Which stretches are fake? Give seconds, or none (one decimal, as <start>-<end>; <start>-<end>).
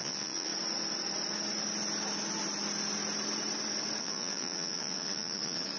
0.0-0.5; 4.0-5.8